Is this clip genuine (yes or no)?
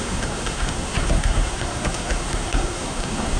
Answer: no